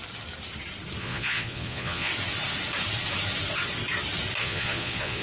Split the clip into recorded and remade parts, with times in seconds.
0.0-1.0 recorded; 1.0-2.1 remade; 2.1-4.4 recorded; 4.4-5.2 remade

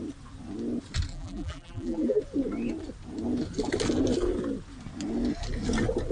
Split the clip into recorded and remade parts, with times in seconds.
0.0-1.1 recorded; 1.1-2.2 remade; 2.2-6.1 recorded

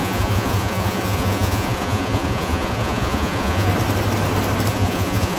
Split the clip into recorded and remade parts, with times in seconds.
0.0-3.7 remade; 3.7-4.7 recorded; 4.7-5.4 remade

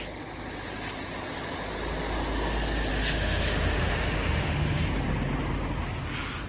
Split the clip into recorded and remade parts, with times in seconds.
0.0-2.9 recorded; 2.9-4.9 remade; 4.9-6.5 recorded

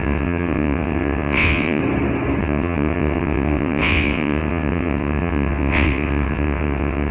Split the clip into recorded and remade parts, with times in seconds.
0.0-1.8 remade; 1.8-2.4 recorded; 2.4-7.1 remade

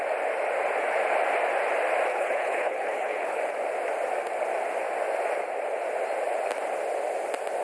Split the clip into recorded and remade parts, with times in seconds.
0.0-2.1 recorded; 2.1-3.4 remade; 3.4-7.6 recorded

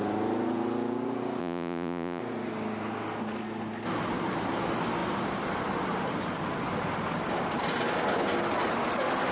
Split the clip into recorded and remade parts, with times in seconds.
0.0-1.4 recorded; 1.4-2.2 remade; 2.2-9.3 recorded

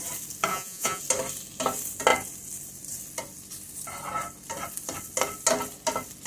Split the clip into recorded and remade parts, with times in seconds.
0.0-0.5 recorded; 0.5-1.0 remade; 1.0-6.3 recorded